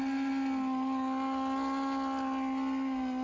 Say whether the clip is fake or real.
real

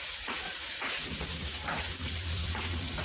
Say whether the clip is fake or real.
fake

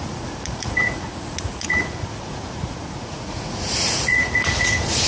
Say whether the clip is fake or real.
fake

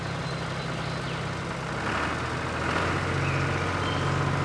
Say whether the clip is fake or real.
real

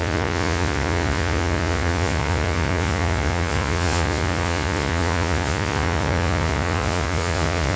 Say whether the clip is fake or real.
fake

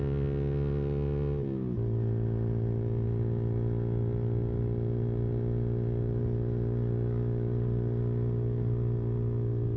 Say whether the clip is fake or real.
real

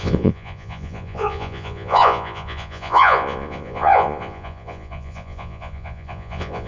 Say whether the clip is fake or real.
fake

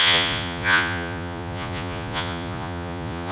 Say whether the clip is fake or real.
fake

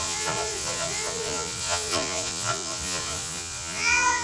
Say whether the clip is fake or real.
fake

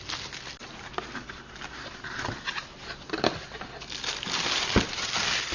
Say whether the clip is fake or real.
real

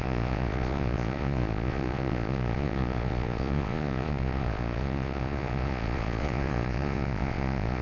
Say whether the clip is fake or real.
fake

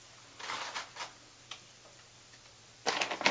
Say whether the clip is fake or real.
real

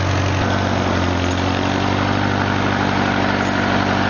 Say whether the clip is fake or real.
real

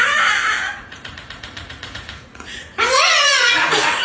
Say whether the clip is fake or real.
fake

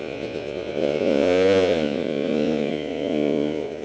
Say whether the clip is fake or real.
fake